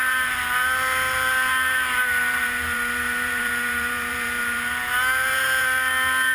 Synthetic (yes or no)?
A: yes